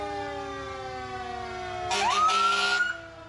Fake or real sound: real